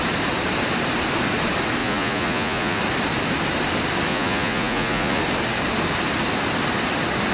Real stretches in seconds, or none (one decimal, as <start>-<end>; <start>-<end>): 0.0-1.8; 2.8-4.1; 5.2-7.3